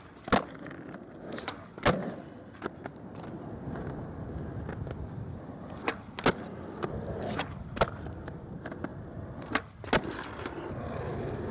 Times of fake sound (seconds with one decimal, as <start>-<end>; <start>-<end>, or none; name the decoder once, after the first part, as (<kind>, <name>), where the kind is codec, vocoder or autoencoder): none